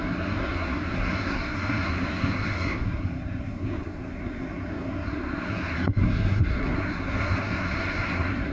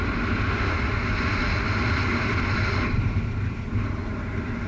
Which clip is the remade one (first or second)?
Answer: first